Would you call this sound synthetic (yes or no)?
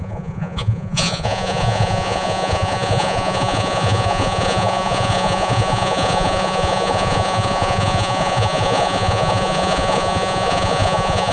yes